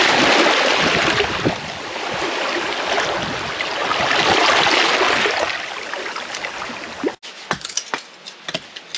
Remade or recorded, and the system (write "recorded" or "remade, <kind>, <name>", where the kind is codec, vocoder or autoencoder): recorded